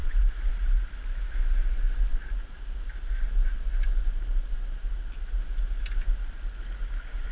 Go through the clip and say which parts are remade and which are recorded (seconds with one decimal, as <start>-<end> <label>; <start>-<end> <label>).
0.0-7.3 recorded